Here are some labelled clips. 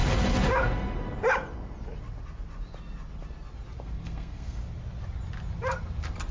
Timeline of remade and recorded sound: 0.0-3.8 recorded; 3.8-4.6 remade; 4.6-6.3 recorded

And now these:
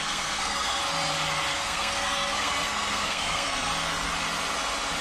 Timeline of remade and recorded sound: 0.0-0.8 remade; 0.8-1.5 recorded; 1.5-3.7 remade; 3.7-5.0 recorded

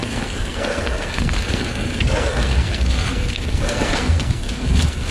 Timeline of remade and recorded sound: 0.0-5.1 remade

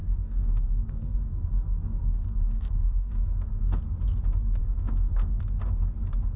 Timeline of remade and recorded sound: 0.0-3.8 remade; 3.8-4.6 recorded; 4.6-5.4 remade; 5.4-6.4 recorded

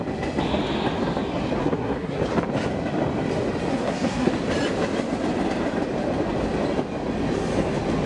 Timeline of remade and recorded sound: 0.0-1.6 recorded; 1.6-2.2 remade; 2.2-3.7 recorded; 3.7-4.3 remade; 4.3-8.1 recorded